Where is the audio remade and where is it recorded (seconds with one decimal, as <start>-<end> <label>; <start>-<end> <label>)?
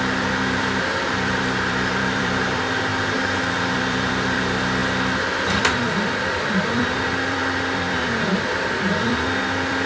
0.0-2.9 remade; 2.9-3.4 recorded; 3.4-4.8 remade; 4.8-5.5 recorded; 5.5-9.9 remade